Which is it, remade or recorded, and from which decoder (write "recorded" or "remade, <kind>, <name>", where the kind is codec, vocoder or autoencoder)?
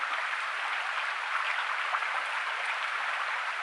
recorded